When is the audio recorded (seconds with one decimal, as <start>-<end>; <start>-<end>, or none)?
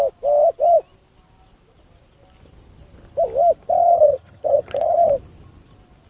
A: 0.0-3.8; 5.1-6.1